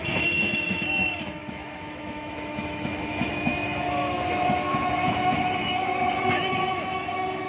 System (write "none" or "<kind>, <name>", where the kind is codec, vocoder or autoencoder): autoencoder, DAC-VAE